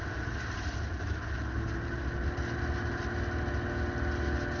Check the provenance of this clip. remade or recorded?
recorded